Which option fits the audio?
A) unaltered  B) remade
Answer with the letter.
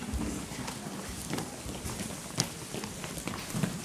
A